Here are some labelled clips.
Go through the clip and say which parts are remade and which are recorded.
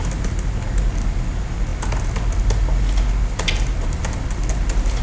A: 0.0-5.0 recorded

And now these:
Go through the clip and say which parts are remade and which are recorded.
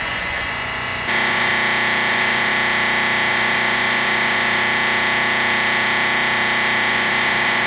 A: 0.0-1.5 remade; 1.5-2.1 recorded; 2.1-2.5 remade; 2.5-3.3 recorded; 3.3-4.6 remade; 4.6-6.9 recorded; 6.9-7.7 remade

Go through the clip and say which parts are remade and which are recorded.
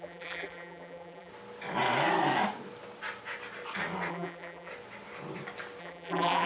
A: 0.0-1.3 remade; 1.3-4.1 recorded; 4.1-4.7 remade; 4.7-5.8 recorded; 5.8-6.5 remade